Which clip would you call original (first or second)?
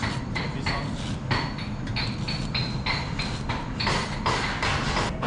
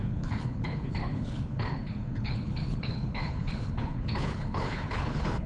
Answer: first